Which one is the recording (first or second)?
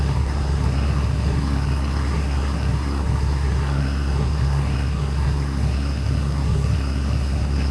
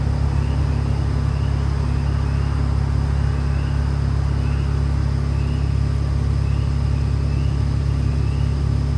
second